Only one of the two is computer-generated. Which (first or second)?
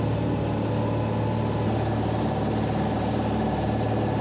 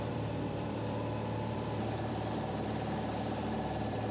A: second